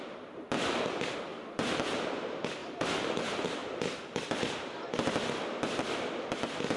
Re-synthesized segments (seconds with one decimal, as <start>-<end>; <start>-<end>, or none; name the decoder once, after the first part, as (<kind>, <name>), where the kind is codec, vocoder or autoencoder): 1.3-2.0 (vocoder, BigVGAN v2); 2.6-3.2; 3.6-6.0